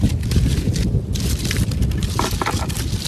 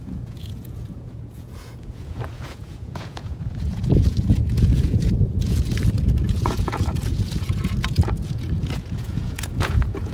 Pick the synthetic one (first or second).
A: second